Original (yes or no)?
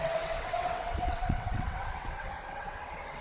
no